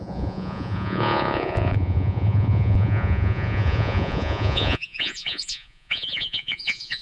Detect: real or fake fake